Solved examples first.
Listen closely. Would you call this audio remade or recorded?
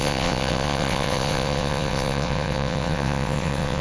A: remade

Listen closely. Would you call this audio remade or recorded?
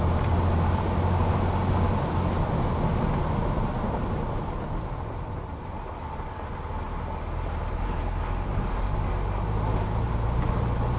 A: recorded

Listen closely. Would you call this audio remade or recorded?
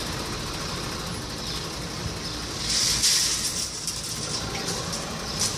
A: recorded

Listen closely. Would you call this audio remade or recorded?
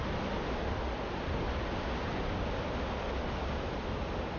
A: recorded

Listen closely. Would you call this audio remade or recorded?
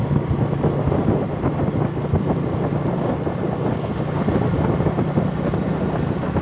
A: recorded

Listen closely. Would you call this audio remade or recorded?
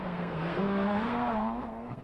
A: remade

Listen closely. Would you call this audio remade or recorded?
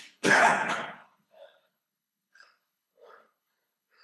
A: remade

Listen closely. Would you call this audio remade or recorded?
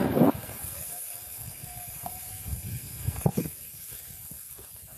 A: remade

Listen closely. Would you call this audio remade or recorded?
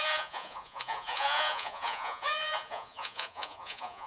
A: remade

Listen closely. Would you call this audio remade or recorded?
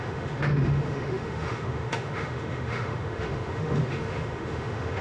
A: remade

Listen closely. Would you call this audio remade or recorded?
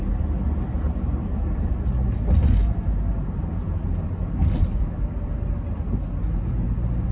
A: recorded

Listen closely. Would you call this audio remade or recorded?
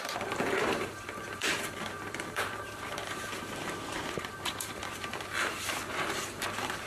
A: remade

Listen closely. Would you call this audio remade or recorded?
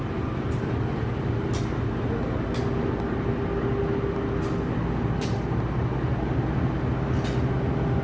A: recorded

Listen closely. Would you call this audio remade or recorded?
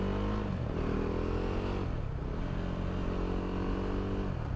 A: recorded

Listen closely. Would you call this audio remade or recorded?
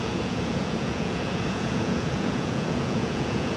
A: remade